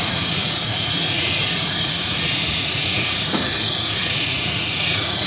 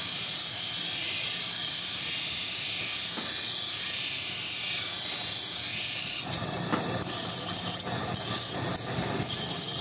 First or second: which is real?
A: second